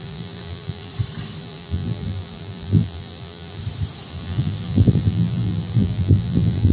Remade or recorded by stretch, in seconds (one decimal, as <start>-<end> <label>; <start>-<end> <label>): 0.0-0.9 remade; 0.9-1.4 recorded; 1.4-3.6 remade; 3.6-4.1 recorded; 4.1-6.7 remade